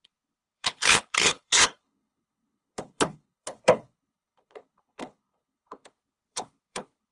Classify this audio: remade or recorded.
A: remade